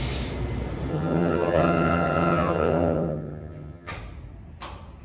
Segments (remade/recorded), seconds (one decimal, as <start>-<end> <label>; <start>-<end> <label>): 0.0-0.9 recorded; 0.9-3.9 remade; 3.9-5.0 recorded